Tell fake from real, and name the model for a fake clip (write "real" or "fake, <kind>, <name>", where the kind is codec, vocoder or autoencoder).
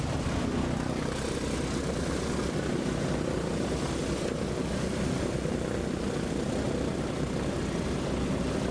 real